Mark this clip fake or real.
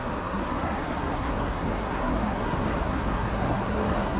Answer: fake